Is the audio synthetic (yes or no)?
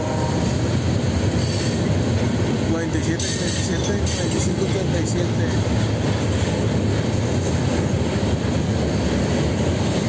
no